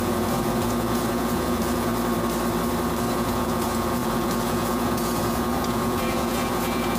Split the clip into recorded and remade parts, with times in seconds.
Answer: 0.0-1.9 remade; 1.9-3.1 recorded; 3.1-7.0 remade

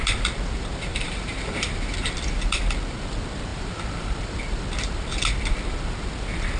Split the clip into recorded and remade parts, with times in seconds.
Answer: 0.0-0.9 recorded; 0.9-1.6 remade; 1.6-6.6 recorded

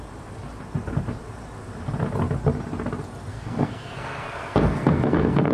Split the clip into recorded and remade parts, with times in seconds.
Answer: 0.0-3.3 recorded; 3.3-5.5 remade